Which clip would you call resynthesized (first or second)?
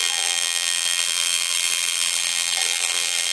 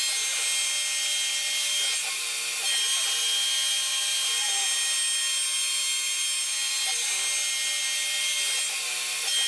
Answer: first